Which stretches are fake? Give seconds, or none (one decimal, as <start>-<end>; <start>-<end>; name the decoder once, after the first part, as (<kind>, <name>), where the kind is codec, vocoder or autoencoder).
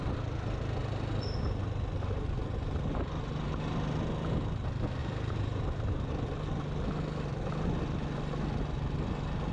5.0-6.1 (vocoder, BigVGAN v2)